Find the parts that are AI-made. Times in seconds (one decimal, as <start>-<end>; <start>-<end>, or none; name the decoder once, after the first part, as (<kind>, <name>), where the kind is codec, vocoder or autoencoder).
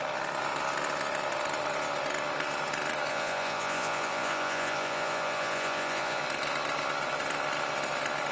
3.1-6.2 (vocoder, Vocos)